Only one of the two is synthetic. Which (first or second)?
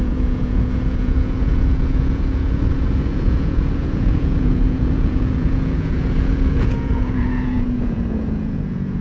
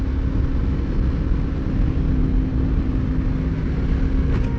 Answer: first